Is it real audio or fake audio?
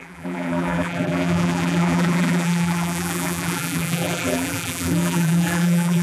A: fake